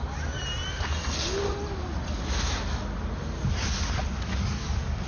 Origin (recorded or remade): recorded